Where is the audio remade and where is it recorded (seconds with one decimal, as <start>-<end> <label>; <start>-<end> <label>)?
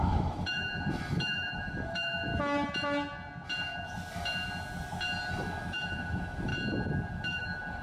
0.0-2.3 remade; 2.3-5.3 recorded; 5.3-6.5 remade; 6.5-7.1 recorded; 7.1-7.8 remade